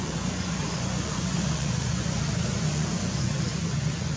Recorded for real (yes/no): no